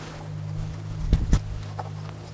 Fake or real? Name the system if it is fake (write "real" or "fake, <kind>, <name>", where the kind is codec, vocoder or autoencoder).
real